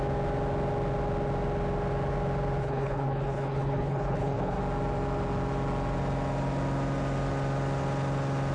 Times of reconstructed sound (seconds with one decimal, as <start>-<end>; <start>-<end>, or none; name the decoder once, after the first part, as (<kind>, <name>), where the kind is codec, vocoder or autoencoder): 2.6-4.6 (codec, HILCodec)